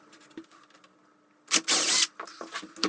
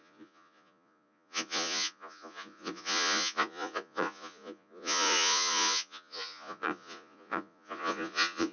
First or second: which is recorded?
first